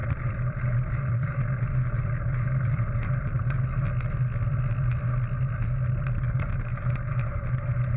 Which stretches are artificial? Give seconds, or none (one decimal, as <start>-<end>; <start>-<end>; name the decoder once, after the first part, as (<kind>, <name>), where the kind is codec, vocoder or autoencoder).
0.0-2.8 (vocoder, BigVGAN v2)